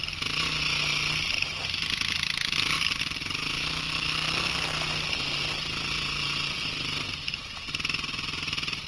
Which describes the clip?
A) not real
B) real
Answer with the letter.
B